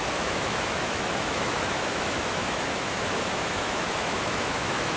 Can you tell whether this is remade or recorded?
remade